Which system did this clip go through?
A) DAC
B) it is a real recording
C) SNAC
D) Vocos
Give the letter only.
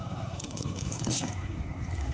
C